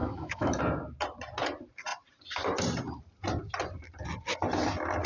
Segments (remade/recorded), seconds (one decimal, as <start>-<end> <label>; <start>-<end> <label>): 0.0-0.6 remade; 0.6-5.1 recorded